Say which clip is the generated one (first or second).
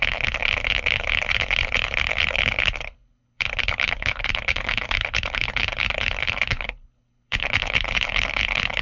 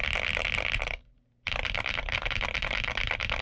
first